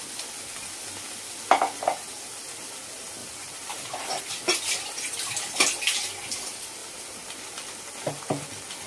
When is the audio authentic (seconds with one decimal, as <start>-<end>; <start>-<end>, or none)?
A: 0.0-3.2; 4.2-6.8; 7.5-8.9